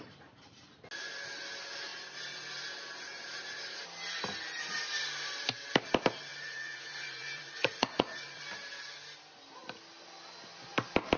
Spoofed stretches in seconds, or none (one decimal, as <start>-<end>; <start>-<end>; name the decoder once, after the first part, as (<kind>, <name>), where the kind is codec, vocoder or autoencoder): 6.3-8.4 (vocoder, Vocos)